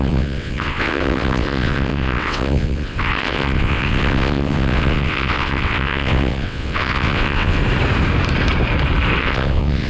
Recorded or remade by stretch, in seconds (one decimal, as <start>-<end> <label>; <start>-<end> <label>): 0.0-7.6 remade; 7.6-9.2 recorded; 9.2-9.9 remade